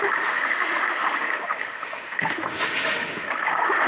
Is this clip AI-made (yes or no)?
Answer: yes